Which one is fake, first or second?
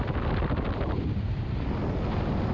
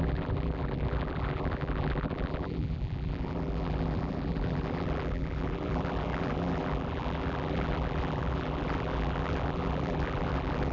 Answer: second